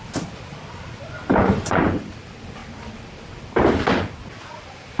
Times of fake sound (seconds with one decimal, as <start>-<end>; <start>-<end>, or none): 1.4-2.1